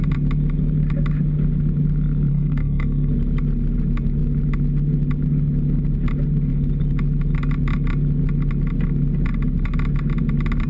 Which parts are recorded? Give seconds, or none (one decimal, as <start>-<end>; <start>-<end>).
0.0-2.3; 3.1-10.7